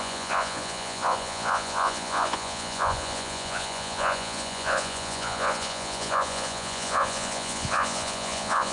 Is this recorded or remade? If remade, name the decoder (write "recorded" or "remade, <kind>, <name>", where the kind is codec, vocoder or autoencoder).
remade, vocoder, Vocos